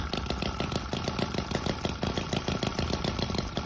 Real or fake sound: real